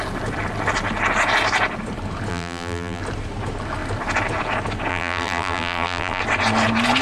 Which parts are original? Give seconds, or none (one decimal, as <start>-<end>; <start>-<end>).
0.0-2.3; 3.0-4.9; 6.2-7.0